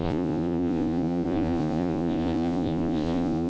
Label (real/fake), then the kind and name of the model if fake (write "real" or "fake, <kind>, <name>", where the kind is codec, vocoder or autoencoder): fake, vocoder, Vocos